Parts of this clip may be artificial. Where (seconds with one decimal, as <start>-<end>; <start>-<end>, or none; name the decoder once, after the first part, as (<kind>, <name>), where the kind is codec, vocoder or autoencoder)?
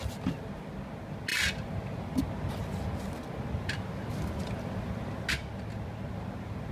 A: none